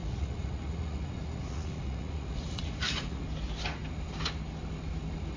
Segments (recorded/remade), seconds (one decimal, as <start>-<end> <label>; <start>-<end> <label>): 0.0-3.2 remade; 3.2-5.4 recorded